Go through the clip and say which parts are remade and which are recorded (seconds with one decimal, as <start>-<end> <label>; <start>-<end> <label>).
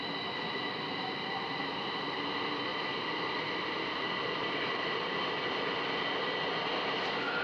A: 0.0-2.7 recorded; 2.7-6.0 remade; 6.0-7.4 recorded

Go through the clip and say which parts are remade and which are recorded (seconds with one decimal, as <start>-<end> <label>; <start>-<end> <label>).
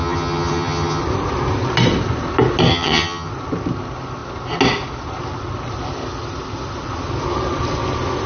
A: 0.0-1.0 remade; 1.0-2.7 recorded; 2.7-3.3 remade; 3.3-8.3 recorded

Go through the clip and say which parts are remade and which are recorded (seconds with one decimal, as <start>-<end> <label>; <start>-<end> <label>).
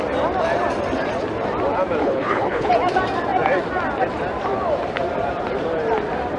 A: 0.0-2.0 recorded; 2.0-2.7 remade; 2.7-6.4 recorded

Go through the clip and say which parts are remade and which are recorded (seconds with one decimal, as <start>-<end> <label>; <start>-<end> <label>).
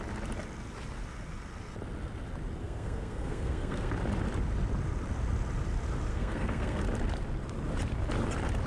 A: 0.0-2.6 recorded; 2.6-3.9 remade; 3.9-6.1 recorded; 6.1-6.8 remade; 6.8-8.7 recorded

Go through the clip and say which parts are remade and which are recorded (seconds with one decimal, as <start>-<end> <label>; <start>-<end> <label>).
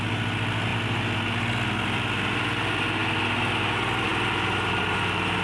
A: 0.0-5.4 recorded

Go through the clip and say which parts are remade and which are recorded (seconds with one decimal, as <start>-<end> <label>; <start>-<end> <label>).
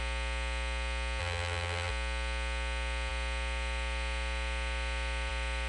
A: 0.0-1.2 recorded; 1.2-1.9 remade; 1.9-5.7 recorded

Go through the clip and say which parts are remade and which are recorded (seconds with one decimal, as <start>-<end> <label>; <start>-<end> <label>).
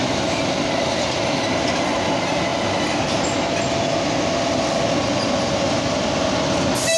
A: 0.0-7.0 recorded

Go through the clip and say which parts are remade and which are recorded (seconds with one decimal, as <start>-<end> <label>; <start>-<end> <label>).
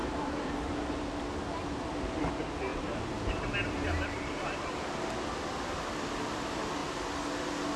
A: 0.0-1.0 remade; 1.0-2.7 recorded; 2.7-5.0 remade; 5.0-7.8 recorded